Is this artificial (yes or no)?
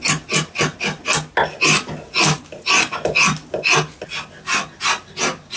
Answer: no